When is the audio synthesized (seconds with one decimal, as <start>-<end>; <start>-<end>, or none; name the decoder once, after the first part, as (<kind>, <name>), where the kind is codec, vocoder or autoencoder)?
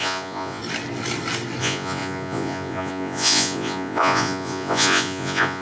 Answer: 0.0-0.6 (vocoder, Vocos); 1.6-5.6